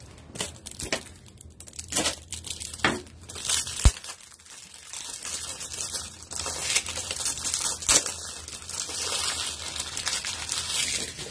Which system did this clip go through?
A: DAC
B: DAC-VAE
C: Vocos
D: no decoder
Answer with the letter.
D